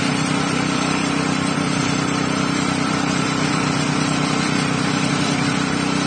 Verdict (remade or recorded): remade